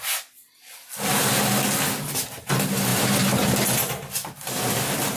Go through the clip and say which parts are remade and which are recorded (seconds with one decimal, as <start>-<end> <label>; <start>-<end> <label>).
0.0-5.2 recorded